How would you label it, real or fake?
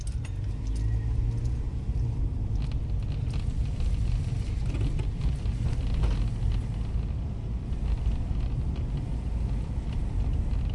real